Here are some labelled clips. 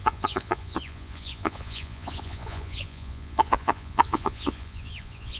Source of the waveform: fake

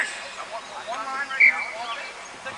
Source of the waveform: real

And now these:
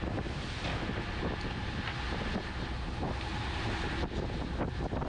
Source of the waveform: real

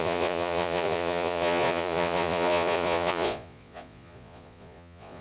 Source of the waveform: fake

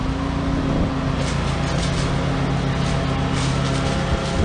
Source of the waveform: real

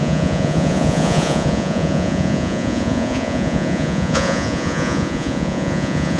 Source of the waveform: fake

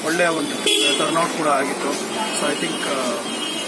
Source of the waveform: fake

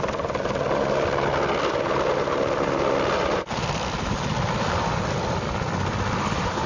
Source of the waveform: real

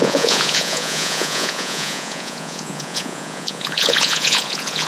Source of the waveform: fake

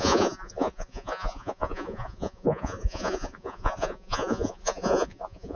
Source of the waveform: fake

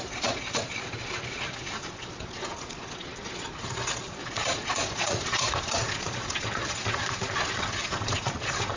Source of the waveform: fake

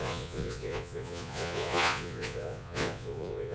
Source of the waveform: fake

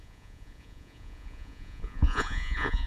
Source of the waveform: fake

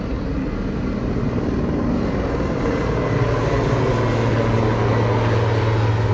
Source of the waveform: real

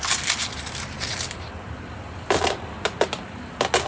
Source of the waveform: real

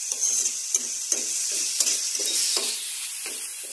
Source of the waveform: real